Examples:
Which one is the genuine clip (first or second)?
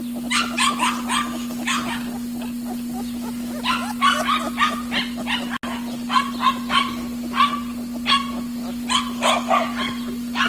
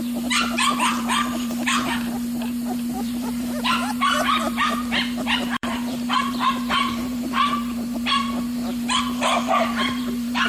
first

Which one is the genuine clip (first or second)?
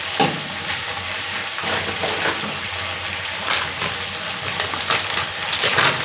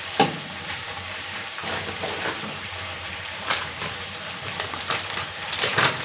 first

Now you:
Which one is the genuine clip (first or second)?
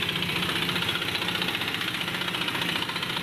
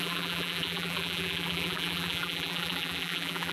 first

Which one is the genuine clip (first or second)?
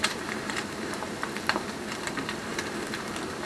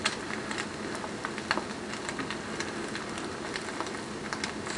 second